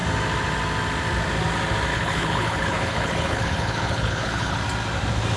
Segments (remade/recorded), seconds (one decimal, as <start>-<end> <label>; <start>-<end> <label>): 0.0-1.9 recorded; 1.9-4.6 remade; 4.6-5.4 recorded